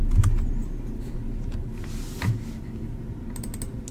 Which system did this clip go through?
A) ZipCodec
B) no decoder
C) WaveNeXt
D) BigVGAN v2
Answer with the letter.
B